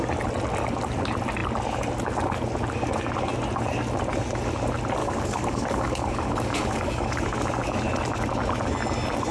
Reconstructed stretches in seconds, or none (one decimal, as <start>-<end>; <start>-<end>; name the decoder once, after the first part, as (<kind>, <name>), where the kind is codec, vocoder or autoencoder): 5.0-7.2 (codec, DAC)